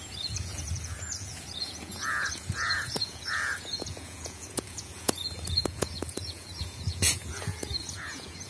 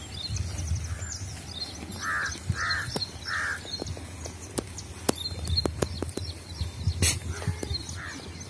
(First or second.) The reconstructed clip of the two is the first